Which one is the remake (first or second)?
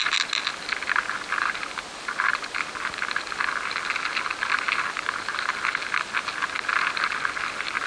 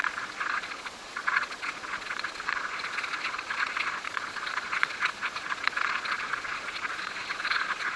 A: second